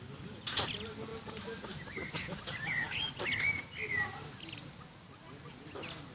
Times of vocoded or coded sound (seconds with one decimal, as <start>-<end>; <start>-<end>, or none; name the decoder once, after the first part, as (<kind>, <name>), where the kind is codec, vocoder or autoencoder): none